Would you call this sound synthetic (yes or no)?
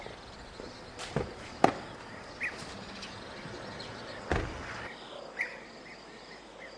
no